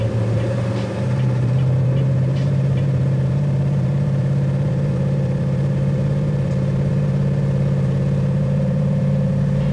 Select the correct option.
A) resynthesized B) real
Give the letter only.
A